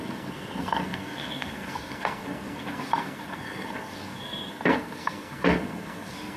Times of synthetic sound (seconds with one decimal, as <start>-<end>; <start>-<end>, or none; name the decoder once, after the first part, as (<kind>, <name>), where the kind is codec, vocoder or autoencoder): 0.0-6.4 (codec, SNAC)